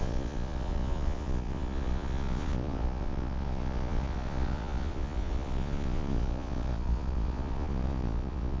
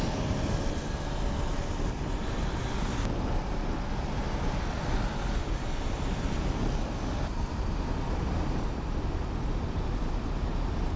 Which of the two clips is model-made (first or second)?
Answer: first